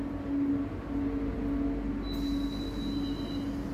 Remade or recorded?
recorded